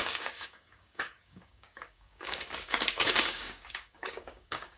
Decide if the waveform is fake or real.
fake